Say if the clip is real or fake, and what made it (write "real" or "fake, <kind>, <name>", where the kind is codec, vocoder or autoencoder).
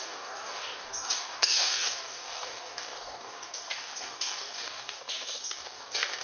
fake, codec, DAC